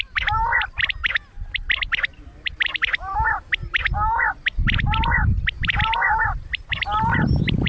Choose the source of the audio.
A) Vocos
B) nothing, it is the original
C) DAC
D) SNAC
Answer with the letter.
B